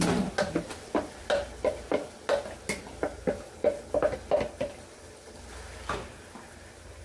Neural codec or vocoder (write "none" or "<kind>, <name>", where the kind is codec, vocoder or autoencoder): none